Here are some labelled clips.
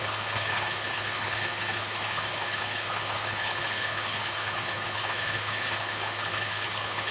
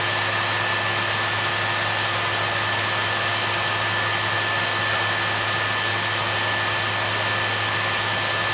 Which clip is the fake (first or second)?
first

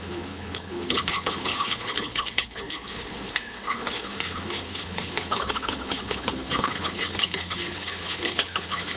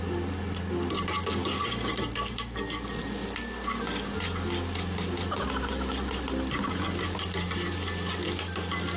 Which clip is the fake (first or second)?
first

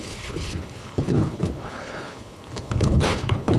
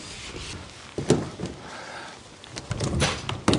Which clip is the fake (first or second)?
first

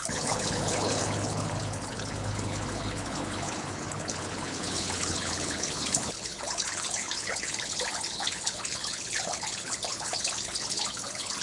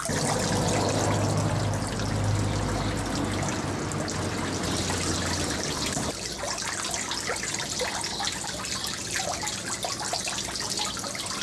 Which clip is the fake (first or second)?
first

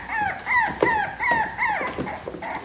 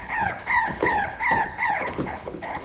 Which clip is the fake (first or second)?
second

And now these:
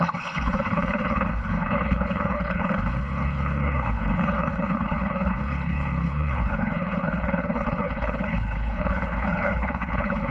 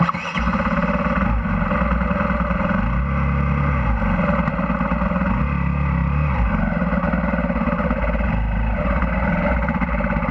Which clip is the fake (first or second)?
first